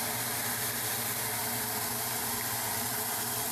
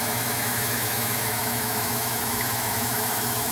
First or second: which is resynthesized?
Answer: second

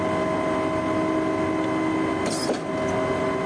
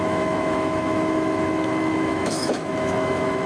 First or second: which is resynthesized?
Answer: second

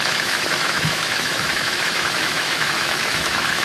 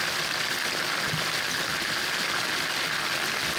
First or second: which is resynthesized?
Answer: first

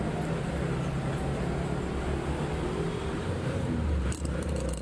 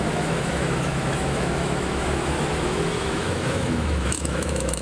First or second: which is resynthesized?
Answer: second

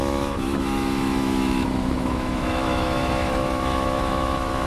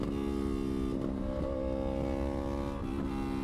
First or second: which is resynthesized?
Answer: first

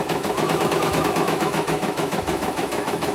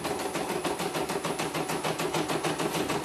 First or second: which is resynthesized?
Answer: first